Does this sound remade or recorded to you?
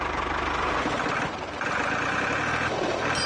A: recorded